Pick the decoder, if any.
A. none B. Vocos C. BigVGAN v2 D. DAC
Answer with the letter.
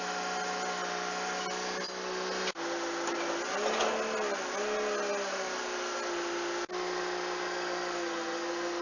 A